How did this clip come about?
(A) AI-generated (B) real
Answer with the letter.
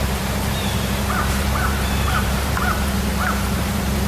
A